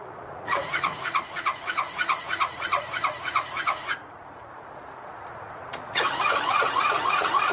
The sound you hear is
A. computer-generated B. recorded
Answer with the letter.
A